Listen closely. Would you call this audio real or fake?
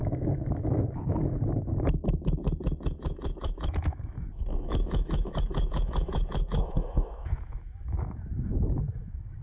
fake